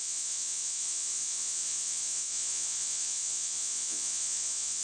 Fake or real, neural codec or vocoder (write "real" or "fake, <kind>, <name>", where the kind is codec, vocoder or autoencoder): fake, vocoder, Vocos